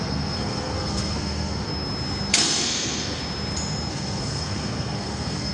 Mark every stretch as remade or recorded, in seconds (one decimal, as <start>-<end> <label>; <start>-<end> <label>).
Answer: 0.0-1.7 remade; 1.7-2.3 recorded; 2.3-3.2 remade; 3.2-3.9 recorded; 3.9-5.5 remade